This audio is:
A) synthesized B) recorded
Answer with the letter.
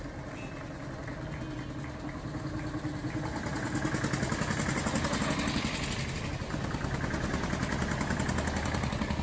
B